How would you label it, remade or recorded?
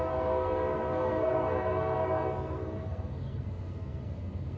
remade